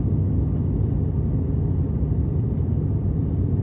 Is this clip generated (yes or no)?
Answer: no